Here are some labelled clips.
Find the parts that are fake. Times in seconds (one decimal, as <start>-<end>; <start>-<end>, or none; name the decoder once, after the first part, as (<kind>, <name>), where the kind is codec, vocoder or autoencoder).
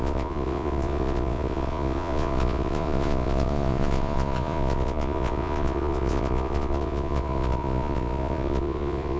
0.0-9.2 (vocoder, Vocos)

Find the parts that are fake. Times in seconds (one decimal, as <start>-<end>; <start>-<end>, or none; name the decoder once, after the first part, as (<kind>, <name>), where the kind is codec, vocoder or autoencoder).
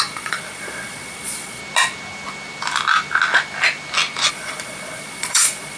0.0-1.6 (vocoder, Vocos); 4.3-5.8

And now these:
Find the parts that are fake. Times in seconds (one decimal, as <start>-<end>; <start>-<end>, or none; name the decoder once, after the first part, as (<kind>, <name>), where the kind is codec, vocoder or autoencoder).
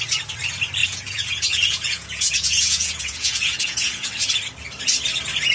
0.8-4.1 (vocoder, Vocos)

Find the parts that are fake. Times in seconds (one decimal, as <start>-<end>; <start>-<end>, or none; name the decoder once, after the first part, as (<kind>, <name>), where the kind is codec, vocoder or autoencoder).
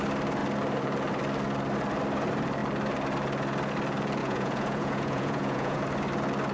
4.2-5.8 (vocoder, Vocos)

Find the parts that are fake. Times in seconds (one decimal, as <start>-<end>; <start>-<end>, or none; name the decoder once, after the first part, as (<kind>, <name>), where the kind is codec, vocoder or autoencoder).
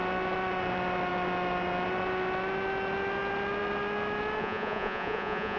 4.4-5.6 (vocoder, Vocos)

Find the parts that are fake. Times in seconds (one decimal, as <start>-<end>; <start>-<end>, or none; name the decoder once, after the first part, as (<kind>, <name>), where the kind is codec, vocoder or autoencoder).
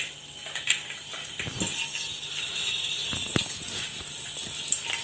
3.2-4.0 (vocoder, Vocos)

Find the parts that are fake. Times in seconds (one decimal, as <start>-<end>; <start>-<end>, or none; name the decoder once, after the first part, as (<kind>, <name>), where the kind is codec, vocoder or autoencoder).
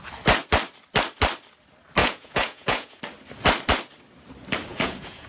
2.0-3.0 (vocoder, Vocos); 4.7-5.3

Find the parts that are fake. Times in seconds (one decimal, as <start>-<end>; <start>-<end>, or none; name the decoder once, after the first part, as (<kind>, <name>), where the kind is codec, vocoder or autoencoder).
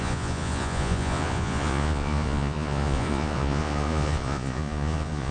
0.0-5.3 (vocoder, Vocos)